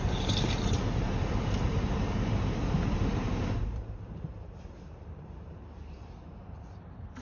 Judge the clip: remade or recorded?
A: remade